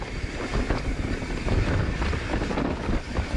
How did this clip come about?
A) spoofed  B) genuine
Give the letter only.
B